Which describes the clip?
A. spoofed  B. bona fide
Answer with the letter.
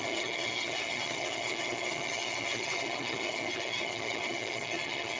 A